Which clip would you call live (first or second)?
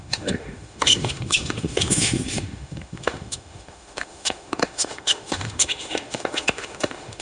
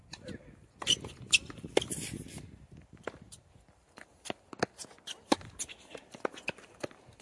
second